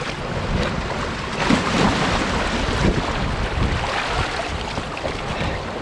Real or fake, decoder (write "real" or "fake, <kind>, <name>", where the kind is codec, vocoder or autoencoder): fake, vocoder, BigVGAN v2